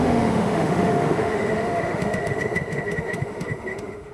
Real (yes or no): no